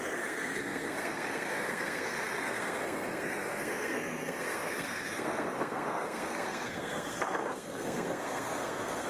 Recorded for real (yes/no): no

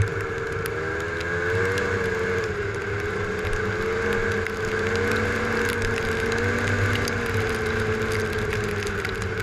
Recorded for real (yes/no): yes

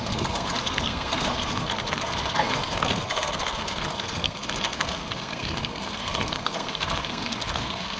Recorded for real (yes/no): no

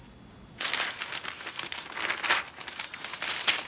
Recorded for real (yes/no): yes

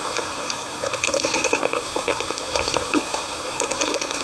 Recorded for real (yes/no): no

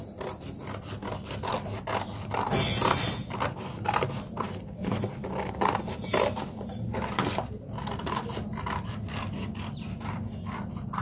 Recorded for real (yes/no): yes